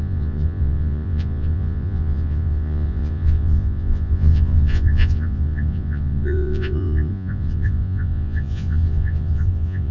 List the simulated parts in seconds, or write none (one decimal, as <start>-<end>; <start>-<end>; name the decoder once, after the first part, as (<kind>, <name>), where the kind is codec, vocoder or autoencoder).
0.0-9.9 (vocoder, Vocos)

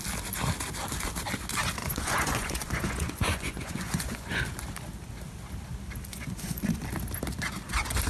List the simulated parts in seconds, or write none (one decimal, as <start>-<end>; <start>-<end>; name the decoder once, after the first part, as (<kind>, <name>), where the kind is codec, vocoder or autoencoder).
1.8-4.4 (vocoder, Vocos); 6.1-6.6

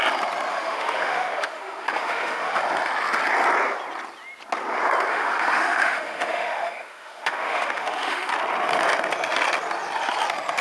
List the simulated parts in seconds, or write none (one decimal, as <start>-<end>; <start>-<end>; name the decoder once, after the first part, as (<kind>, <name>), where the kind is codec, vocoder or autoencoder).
0.5-2.6 (autoencoder, DAC-VAE); 5.1-8.3